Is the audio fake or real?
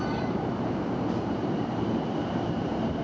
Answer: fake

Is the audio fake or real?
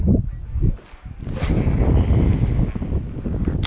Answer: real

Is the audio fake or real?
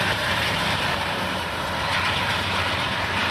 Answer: fake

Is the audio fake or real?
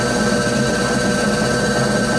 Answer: real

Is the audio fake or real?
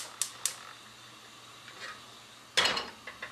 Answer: real